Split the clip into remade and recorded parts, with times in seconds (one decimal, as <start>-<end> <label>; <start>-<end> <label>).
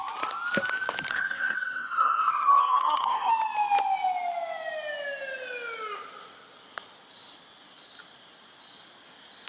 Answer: 0.0-1.1 recorded; 1.1-3.3 remade; 3.3-9.5 recorded